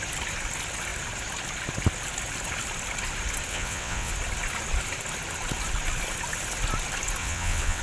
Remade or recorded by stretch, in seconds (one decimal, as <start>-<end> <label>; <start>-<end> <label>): 0.0-3.5 recorded; 3.5-4.1 remade; 4.1-7.2 recorded; 7.2-7.8 remade